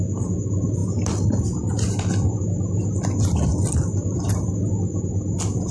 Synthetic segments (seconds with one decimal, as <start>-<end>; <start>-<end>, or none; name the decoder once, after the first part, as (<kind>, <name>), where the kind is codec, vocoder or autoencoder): none